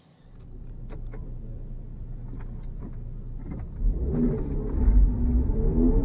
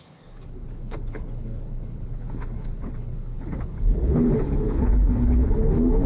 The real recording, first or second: first